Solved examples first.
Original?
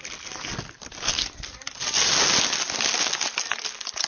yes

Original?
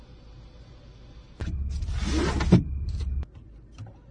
yes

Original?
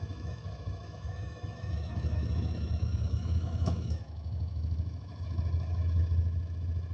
no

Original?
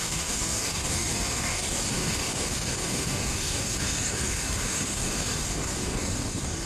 no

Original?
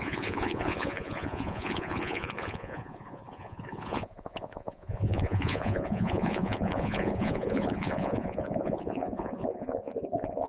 no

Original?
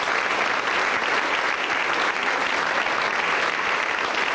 yes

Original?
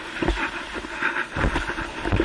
no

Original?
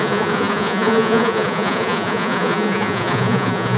no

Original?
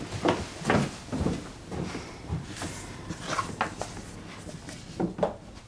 yes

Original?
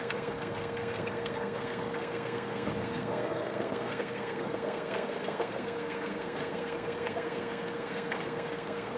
no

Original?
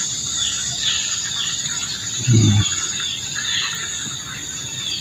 yes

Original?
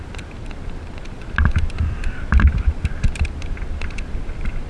yes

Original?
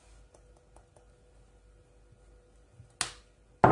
yes